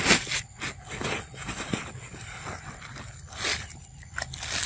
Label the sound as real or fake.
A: real